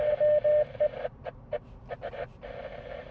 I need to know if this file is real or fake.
real